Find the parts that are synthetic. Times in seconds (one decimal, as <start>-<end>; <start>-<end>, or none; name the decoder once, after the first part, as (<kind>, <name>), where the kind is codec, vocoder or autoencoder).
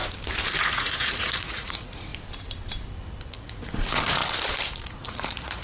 0.6-2.1 (vocoder, Vocos); 3.3-4.2; 4.7-5.6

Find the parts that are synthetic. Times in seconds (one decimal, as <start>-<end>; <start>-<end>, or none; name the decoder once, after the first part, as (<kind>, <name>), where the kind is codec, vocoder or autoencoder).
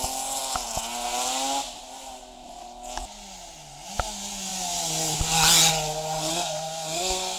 6.3-7.4 (codec, SNAC)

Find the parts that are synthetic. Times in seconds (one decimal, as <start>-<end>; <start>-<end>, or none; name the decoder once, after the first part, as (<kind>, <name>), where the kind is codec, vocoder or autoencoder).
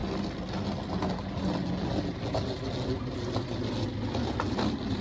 none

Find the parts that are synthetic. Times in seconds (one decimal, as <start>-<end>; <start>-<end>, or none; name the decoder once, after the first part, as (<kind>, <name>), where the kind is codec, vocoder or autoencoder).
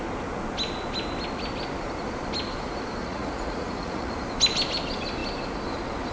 3.0-4.1 (vocoder, Vocos)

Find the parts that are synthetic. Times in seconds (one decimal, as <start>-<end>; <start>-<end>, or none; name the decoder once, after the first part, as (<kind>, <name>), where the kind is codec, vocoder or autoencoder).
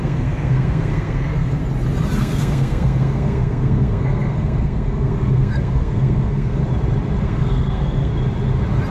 0.0-1.6 (codec, SNAC); 2.2-6.6; 7.2-8.1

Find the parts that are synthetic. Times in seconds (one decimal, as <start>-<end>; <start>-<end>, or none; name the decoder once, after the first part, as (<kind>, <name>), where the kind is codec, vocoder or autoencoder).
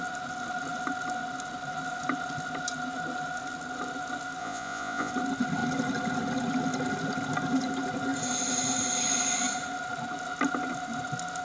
4.4-5.1 (vocoder, Vocos)